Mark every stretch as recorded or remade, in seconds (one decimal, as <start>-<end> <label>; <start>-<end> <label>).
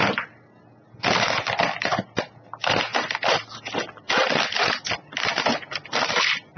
0.0-6.6 recorded